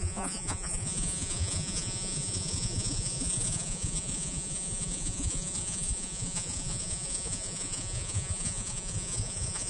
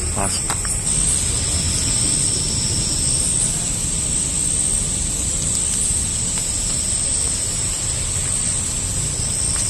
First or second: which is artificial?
first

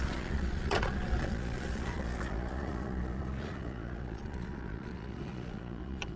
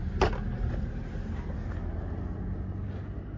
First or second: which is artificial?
first